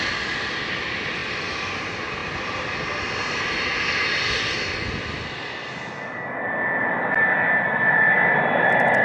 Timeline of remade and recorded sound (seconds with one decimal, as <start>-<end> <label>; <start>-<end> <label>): 0.0-9.0 recorded